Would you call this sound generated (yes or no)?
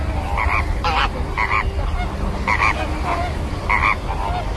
no